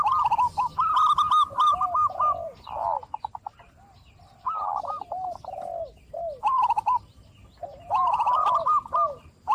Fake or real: real